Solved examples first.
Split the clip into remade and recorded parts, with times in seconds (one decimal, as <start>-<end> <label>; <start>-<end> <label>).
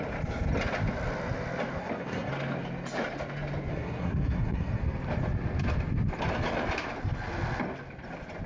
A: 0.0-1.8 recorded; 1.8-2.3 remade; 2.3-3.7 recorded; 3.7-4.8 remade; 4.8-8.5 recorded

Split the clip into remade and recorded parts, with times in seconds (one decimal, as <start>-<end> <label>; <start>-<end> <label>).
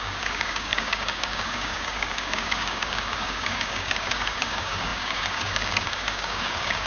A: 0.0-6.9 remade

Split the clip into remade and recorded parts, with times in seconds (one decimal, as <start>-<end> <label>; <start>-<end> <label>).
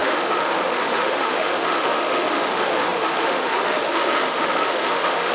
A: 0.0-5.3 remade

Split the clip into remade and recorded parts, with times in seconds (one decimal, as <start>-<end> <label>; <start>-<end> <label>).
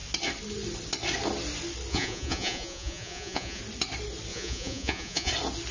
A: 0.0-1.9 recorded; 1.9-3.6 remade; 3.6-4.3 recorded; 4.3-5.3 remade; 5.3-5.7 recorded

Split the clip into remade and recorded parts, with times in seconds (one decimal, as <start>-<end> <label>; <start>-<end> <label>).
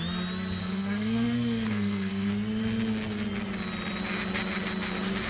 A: 0.0-0.6 recorded; 0.6-2.3 remade; 2.3-5.3 recorded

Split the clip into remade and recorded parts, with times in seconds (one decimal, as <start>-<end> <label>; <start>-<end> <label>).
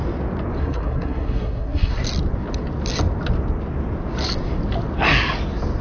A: 0.0-0.6 recorded; 0.6-2.0 remade; 2.0-5.8 recorded